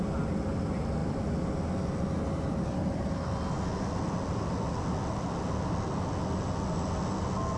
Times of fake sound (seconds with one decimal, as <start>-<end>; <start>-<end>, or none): none